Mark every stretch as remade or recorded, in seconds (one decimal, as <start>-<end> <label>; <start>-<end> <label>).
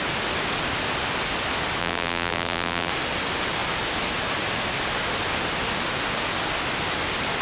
0.0-1.8 recorded; 1.8-2.9 remade; 2.9-7.4 recorded